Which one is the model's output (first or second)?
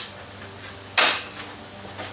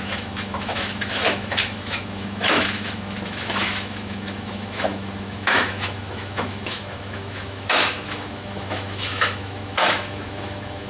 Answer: second